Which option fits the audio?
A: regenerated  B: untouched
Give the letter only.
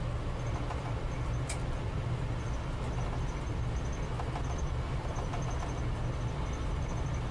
B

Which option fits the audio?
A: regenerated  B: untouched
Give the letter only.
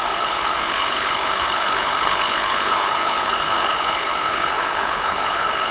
A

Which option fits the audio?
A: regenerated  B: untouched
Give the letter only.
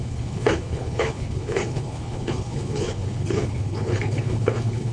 A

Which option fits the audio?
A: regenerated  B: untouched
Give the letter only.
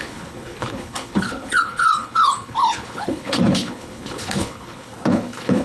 A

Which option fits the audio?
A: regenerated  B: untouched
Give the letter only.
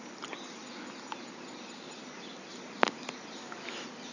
B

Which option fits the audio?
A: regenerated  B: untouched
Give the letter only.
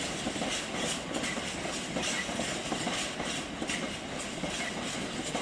B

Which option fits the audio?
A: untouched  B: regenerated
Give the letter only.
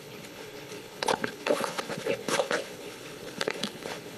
B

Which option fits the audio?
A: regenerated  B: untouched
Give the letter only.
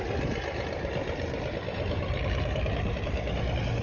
B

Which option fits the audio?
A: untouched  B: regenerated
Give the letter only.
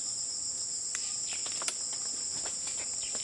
A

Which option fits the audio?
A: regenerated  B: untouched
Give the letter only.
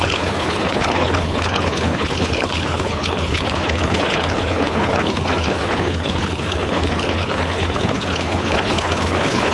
A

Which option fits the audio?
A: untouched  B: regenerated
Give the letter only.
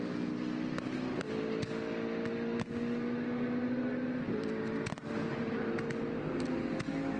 A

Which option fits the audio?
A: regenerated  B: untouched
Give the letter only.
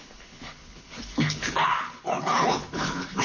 A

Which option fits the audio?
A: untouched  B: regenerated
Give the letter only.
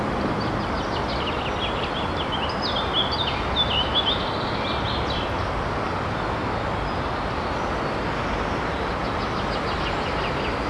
A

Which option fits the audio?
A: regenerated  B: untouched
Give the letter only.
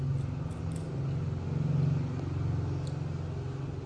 B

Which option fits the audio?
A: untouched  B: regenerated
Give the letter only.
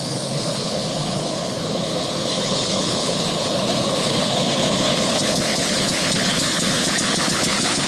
B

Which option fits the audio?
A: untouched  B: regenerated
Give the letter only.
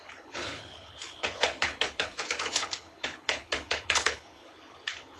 B